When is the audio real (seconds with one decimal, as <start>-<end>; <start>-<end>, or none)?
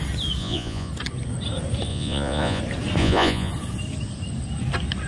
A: 0.0-0.4; 0.9-1.9; 2.6-3.0; 3.5-5.1